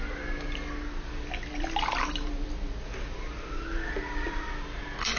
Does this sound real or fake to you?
real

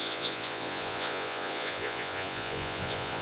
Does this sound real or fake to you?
fake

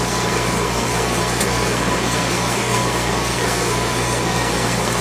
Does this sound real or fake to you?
fake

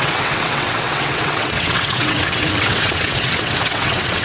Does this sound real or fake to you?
fake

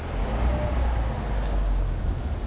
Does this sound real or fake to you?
real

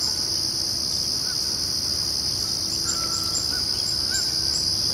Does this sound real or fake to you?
real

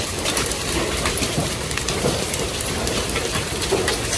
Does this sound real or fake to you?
fake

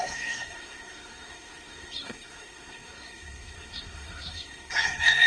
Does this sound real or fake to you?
fake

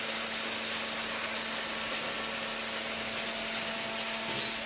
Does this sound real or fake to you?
real